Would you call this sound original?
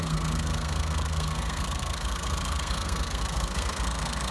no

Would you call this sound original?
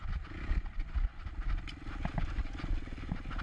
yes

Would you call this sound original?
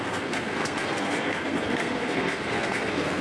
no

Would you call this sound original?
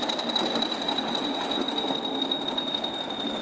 yes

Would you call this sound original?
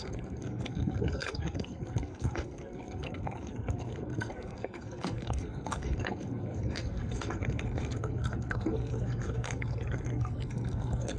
no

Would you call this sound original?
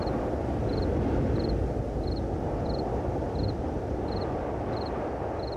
yes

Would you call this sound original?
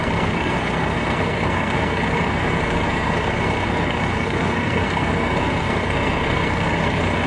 no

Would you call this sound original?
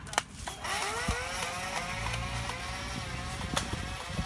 yes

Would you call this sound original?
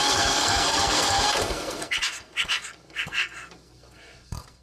no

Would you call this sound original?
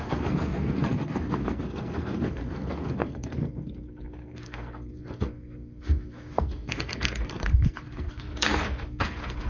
no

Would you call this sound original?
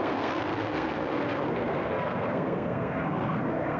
no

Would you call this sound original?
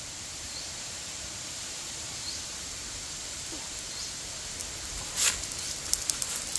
yes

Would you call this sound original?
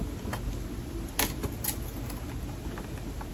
yes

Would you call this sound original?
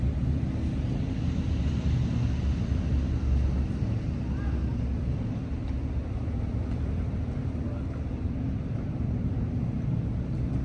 yes